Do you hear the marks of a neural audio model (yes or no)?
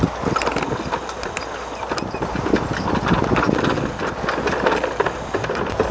no